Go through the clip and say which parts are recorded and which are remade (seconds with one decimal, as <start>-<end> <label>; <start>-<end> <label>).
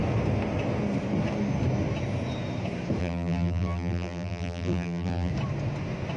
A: 0.0-3.0 recorded; 3.0-5.3 remade; 5.3-6.2 recorded